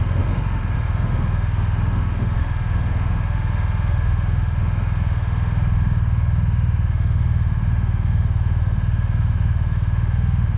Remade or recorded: remade